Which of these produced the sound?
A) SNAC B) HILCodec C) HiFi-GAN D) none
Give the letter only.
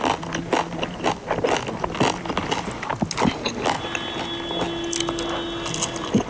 D